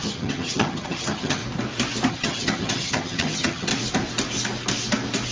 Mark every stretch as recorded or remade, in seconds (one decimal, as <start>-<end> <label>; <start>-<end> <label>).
0.0-1.4 remade; 1.4-2.1 recorded; 2.1-3.7 remade; 3.7-5.3 recorded